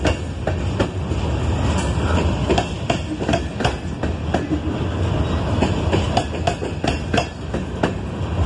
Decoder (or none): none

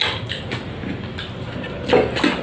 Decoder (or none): none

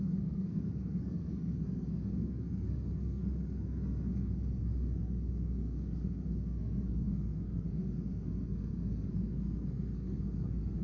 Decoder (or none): codec, SNAC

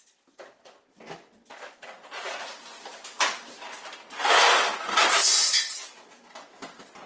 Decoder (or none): none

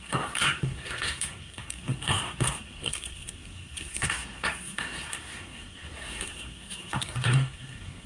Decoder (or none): codec, SNAC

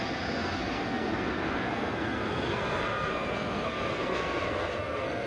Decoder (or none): codec, SNAC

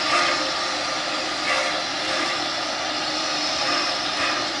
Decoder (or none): none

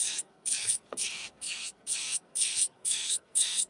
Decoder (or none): codec, SNAC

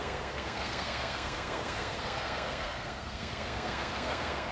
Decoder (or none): codec, SNAC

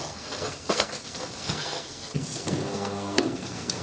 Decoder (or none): codec, SNAC